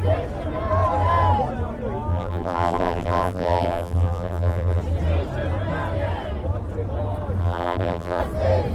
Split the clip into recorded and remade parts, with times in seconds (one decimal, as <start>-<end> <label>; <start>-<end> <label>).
0.0-2.1 recorded; 2.1-4.8 remade; 4.8-7.4 recorded; 7.4-8.2 remade; 8.2-8.7 recorded